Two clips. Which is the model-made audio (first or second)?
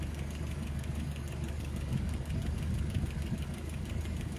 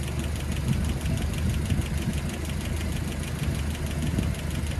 first